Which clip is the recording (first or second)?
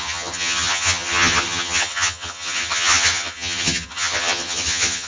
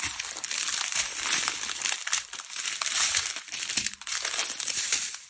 second